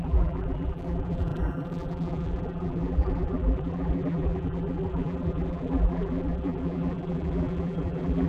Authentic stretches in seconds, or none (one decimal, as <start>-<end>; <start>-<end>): none